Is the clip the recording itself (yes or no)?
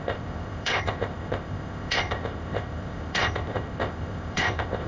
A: no